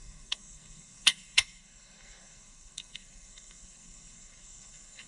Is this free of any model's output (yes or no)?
no